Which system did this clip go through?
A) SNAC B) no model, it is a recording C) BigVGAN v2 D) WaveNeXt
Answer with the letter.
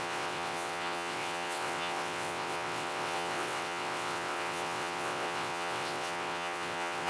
D